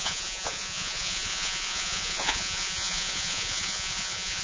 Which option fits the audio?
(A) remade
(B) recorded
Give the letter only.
A